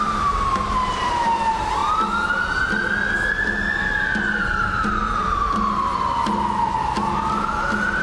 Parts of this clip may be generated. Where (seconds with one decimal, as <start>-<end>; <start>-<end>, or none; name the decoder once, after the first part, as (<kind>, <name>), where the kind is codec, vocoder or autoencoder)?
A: 0.0-1.8 (vocoder, BigVGAN v2); 4.4-5.9